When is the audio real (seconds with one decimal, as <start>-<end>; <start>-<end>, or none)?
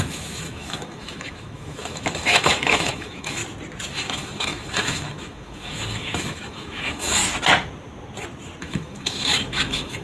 3.4-3.9; 7.2-8.6